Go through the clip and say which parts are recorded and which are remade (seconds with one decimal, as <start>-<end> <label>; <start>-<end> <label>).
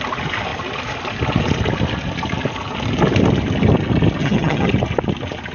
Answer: 0.0-4.2 recorded; 4.2-4.7 remade; 4.7-5.5 recorded